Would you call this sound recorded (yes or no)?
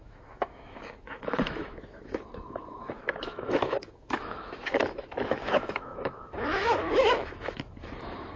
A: no